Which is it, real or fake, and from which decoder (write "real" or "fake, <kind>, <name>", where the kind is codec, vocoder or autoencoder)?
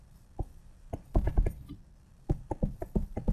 fake, vocoder, BigVGAN v2